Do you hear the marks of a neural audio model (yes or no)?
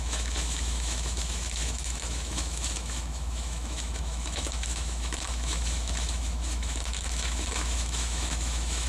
yes